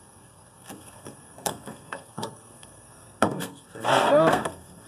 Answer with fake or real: fake